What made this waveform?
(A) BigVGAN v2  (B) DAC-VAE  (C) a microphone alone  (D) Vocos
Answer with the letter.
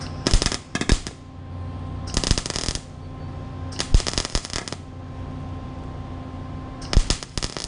C